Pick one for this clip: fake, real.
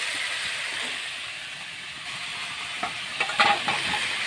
real